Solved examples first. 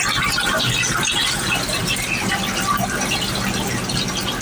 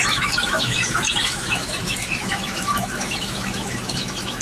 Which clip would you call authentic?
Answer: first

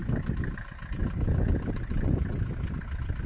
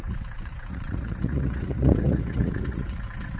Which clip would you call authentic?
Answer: first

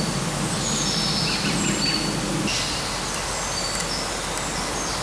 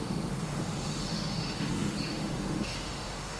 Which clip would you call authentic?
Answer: first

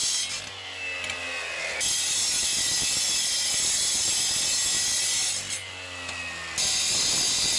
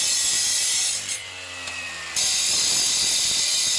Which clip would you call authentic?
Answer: first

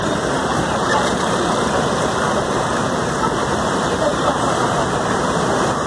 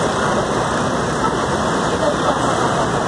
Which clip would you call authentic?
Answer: second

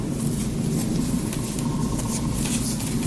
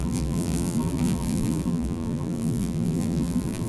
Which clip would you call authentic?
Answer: first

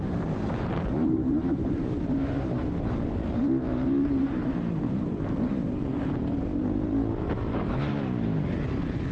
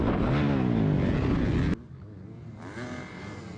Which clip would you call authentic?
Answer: second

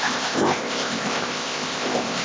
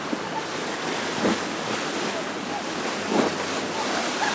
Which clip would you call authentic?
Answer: second